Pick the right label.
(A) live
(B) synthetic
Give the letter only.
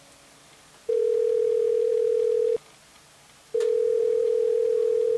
B